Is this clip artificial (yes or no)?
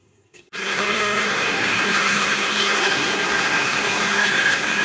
yes